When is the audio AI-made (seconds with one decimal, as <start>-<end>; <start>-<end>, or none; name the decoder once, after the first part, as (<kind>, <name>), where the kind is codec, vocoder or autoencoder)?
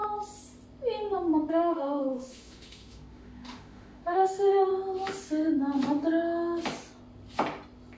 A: 1.5-4.7 (autoencoder, DAC-VAE)